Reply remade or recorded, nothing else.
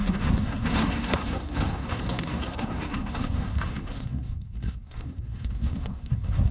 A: remade